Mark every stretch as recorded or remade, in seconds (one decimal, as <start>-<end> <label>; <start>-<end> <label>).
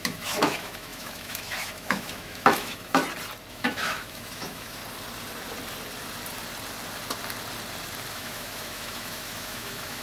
0.0-3.0 remade; 3.0-3.5 recorded; 3.5-4.8 remade; 4.8-8.1 recorded; 8.1-10.0 remade